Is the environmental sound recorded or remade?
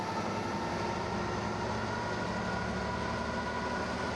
recorded